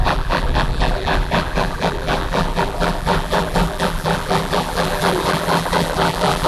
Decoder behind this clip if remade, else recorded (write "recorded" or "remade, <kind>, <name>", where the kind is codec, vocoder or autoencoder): remade, vocoder, BigVGAN v2